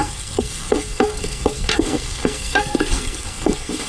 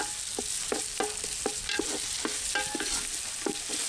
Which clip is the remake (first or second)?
first